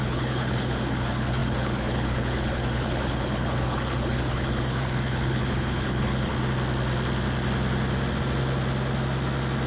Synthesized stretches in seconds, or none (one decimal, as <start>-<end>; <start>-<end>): 0.0-6.3